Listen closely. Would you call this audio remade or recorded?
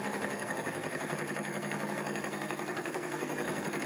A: remade